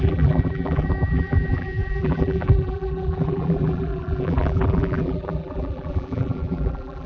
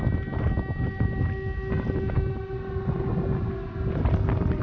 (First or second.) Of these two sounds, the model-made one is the first